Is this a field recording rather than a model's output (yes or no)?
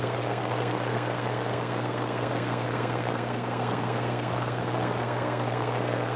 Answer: no